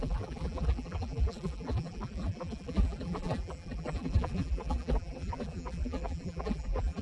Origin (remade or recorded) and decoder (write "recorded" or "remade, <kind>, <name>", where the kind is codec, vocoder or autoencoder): remade, vocoder, BigVGAN v2